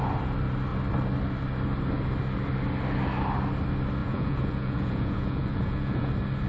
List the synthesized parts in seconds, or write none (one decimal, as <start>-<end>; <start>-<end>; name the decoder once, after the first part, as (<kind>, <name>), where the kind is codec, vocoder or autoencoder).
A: 4.0-6.1 (vocoder, Vocos)